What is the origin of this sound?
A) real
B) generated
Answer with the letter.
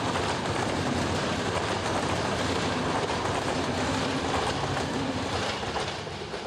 B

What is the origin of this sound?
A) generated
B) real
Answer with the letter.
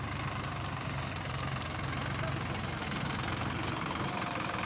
A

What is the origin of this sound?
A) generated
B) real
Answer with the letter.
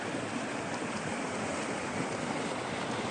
B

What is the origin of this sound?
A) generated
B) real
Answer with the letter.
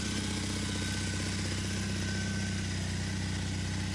B